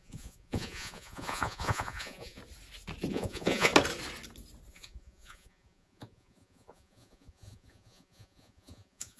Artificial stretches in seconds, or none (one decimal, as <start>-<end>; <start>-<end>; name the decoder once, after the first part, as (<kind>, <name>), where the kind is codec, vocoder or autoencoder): 0.0-2.4 (vocoder, Vocos); 3.1-3.7; 4.7-9.2